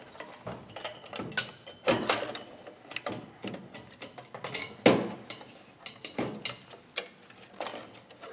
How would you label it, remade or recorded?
recorded